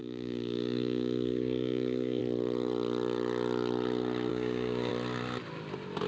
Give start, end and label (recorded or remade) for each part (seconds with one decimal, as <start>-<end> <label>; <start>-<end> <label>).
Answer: 0.0-2.2 remade; 2.2-4.3 recorded; 4.3-4.9 remade; 4.9-6.1 recorded